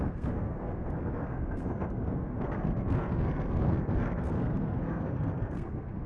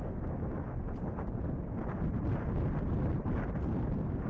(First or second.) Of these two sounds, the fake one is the first